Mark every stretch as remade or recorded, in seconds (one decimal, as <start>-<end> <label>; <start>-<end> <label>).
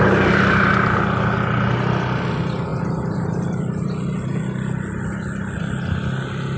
0.0-6.6 recorded